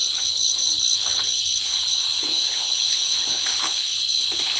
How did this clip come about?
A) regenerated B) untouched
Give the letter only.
A